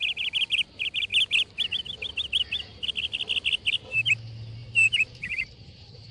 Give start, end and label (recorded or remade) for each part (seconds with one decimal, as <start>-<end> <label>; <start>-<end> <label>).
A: 0.0-4.6 recorded; 4.6-6.1 remade